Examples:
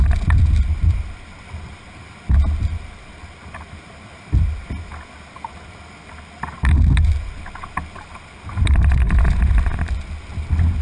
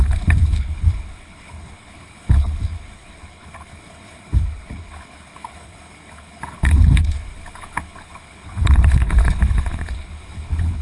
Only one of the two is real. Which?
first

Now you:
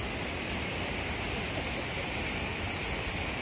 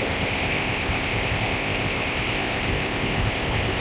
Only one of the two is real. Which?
first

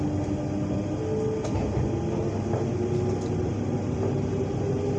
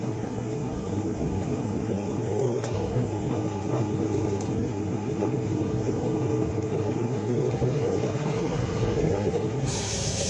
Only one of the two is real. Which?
first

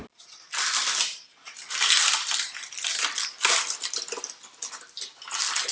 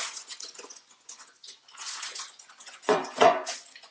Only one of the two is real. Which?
first